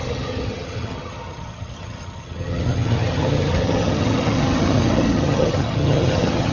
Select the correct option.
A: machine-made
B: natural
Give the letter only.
A